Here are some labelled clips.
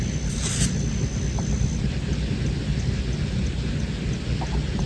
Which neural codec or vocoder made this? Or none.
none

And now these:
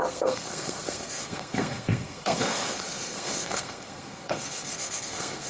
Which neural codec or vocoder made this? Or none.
codec, SNAC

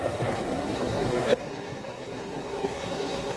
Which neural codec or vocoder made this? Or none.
codec, SNAC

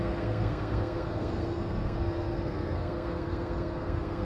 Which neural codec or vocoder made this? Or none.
codec, SNAC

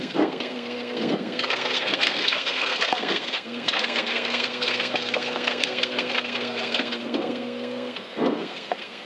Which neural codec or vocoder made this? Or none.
codec, SNAC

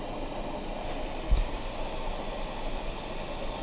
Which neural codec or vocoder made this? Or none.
none